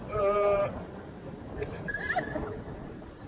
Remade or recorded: remade